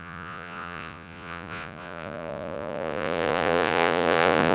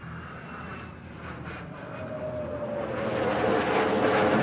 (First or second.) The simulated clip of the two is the first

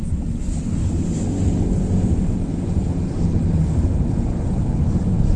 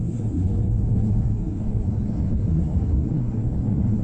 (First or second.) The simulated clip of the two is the second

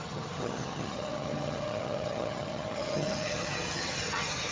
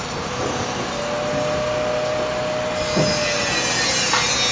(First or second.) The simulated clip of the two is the first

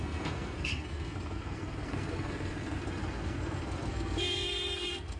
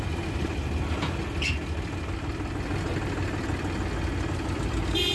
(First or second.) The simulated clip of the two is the first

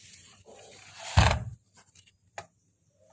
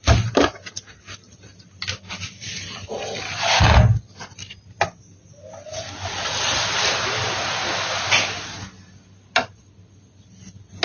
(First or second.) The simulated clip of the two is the first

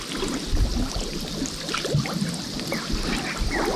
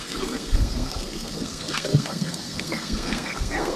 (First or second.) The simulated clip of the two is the second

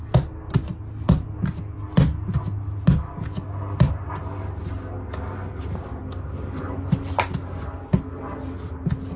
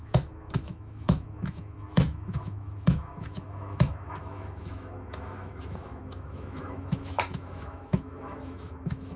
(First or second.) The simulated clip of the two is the second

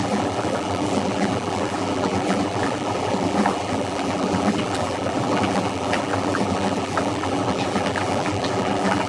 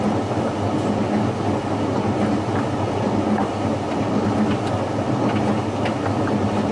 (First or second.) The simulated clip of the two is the first